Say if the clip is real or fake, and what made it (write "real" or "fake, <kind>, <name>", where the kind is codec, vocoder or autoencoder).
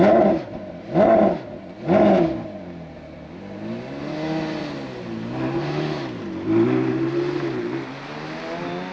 real